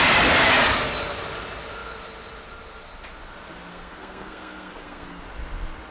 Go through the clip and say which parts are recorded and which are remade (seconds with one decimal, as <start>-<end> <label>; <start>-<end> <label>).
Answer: 0.0-3.7 recorded; 3.7-5.2 remade; 5.2-5.9 recorded